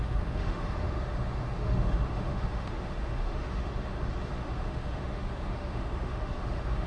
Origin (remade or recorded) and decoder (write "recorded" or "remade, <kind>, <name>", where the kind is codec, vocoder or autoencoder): remade, autoencoder, DAC-VAE